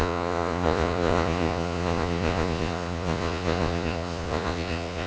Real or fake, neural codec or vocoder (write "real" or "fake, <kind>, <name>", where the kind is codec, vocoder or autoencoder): fake, vocoder, Vocos